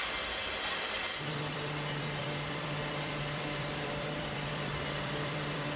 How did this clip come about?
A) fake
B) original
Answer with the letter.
A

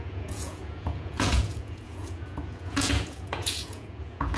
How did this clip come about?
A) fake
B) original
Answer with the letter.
A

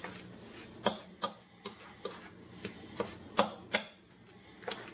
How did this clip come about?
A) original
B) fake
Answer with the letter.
A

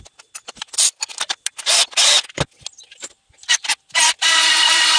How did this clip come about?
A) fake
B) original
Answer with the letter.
B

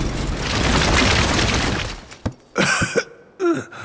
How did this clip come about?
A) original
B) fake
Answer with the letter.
A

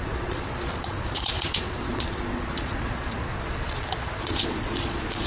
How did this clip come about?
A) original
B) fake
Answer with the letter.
B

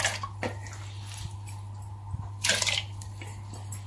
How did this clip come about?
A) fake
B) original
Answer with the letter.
B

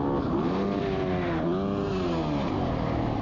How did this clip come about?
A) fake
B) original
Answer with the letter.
B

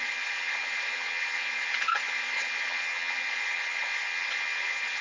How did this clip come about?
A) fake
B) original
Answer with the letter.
A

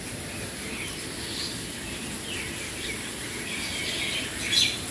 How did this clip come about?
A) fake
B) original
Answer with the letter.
B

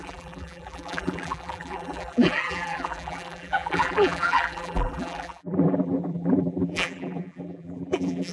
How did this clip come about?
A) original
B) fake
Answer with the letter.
B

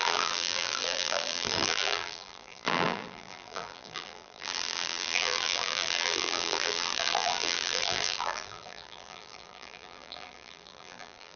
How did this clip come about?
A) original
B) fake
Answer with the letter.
B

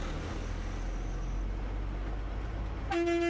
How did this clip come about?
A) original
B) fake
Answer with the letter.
A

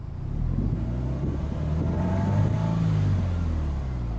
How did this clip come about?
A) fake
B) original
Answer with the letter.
B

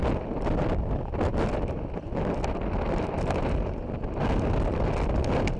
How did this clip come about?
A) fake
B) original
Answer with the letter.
B